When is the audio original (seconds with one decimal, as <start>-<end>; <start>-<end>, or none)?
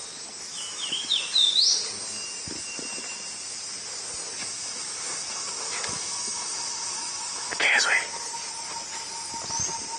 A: 0.0-0.5; 1.2-4.4; 7.7-10.0